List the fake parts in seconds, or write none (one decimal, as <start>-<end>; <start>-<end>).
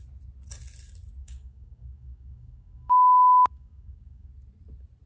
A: 1.2-4.3